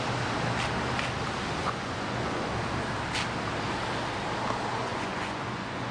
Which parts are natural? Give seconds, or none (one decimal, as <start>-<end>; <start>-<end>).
0.0-1.6; 2.5-4.8